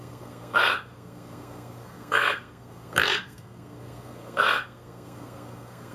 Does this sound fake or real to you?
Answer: fake